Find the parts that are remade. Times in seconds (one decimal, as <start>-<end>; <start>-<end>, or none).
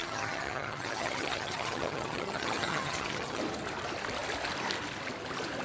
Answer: 0.0-3.4